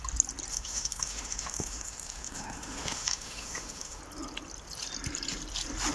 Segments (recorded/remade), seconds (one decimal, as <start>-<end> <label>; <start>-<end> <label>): 0.0-0.5 recorded; 0.5-4.0 remade; 4.0-5.9 recorded